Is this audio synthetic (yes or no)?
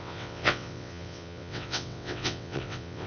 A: yes